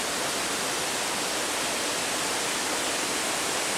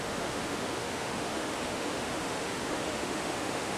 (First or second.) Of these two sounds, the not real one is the second